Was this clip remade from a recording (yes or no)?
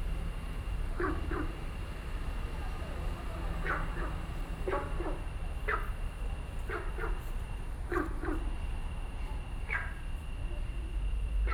no